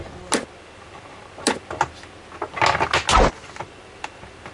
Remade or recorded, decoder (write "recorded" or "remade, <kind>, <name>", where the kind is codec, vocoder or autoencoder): recorded